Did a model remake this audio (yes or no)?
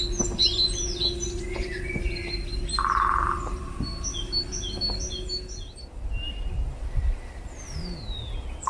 no